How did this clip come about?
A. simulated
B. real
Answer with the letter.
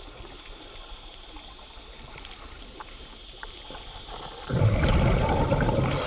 B